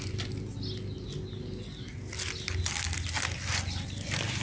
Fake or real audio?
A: real